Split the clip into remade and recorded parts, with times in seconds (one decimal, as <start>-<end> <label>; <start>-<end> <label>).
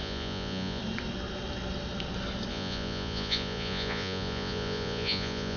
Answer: 0.0-0.8 remade; 0.8-2.5 recorded; 2.5-5.6 remade